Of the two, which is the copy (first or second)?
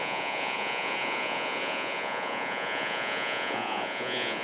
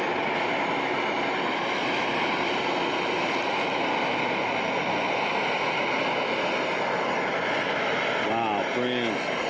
first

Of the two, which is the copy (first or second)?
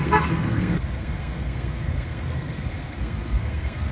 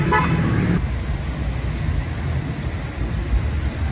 first